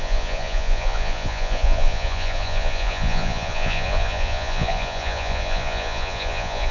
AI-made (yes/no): yes